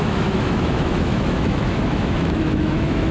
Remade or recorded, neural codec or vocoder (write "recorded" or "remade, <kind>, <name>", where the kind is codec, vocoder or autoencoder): remade, autoencoder, DAC-VAE